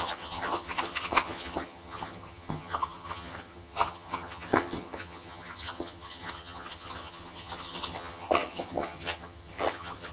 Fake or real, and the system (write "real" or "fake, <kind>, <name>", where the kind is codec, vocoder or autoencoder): fake, vocoder, HiFi-GAN